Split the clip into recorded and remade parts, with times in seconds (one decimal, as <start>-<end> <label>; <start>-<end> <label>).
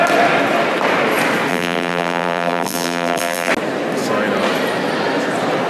0.0-1.5 recorded; 1.5-3.5 remade; 3.5-5.7 recorded